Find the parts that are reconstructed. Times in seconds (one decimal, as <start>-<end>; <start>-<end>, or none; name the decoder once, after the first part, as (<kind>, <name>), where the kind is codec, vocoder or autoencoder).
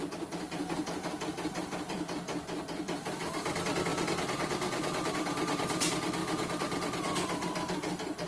0.0-8.3 (vocoder, BigVGAN v2)